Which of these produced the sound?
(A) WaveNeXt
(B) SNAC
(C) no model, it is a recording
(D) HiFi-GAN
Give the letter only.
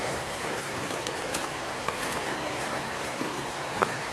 B